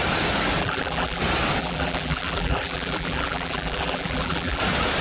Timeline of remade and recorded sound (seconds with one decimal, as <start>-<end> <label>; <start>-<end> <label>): 0.0-0.6 recorded; 0.6-1.2 remade; 1.2-1.6 recorded; 1.6-4.6 remade; 4.6-5.0 recorded